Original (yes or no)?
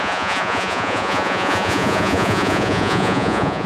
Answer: no